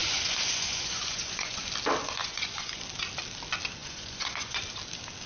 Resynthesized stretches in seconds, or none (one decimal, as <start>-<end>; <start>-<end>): 0.0-1.7; 2.2-2.8; 3.8-4.6